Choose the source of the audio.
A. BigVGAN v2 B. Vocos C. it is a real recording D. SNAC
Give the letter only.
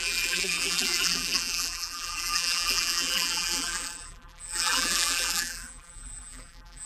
A